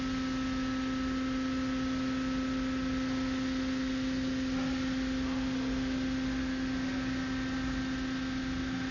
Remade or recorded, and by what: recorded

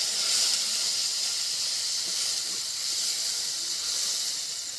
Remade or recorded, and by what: recorded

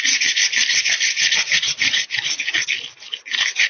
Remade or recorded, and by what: recorded